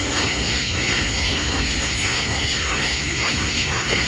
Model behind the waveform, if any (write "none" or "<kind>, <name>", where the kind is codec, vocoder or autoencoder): codec, SNAC